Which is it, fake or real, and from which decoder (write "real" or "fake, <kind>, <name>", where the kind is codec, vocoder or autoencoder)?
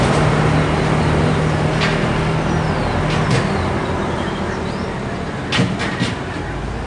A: real